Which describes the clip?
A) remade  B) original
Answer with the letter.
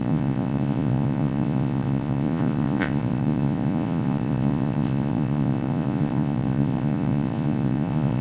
A